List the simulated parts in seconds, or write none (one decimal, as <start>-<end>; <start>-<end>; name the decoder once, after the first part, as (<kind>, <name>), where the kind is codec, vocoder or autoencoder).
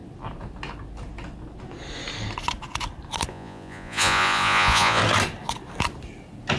3.3-5.0 (vocoder, Vocos)